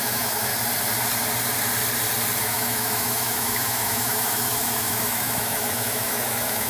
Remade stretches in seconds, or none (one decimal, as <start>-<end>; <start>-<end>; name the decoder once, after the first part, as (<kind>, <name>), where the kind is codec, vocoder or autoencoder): 0.0-0.5 (autoencoder, DAC-VAE); 2.4-6.7